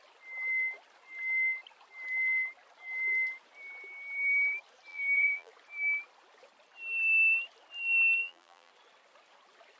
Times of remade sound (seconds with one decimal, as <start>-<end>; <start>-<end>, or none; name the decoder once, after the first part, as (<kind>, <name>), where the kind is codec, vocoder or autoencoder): 4.9-5.5 (vocoder, BigVGAN v2); 8.2-8.7